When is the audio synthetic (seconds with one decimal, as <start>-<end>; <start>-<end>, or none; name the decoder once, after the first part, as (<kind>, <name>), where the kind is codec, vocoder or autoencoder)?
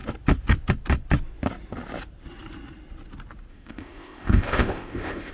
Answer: 3.5-5.3 (codec, ZipCodec)